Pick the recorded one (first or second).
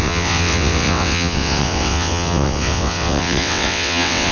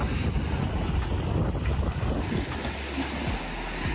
second